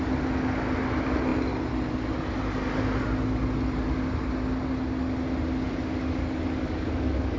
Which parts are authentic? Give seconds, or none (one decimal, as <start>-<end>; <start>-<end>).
0.0-6.2